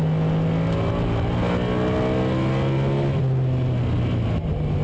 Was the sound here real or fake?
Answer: real